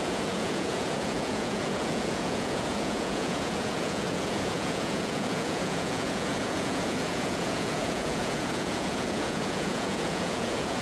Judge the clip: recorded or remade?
remade